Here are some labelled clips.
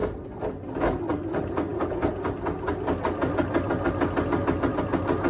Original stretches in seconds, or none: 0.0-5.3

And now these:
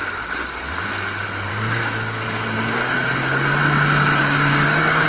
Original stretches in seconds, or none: 0.0-1.5; 3.0-4.2